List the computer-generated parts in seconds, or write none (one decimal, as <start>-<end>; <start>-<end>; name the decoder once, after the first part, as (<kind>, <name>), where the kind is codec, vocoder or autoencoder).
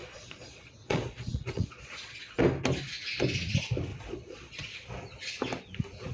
0.0-2.4 (vocoder, Vocos); 3.9-4.7